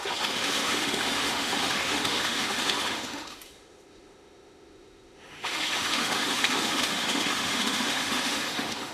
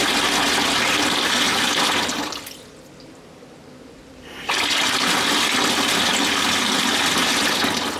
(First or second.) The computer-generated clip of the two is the first